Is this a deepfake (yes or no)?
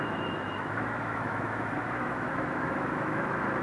yes